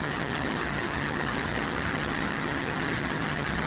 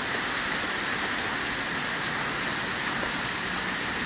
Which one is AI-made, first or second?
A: first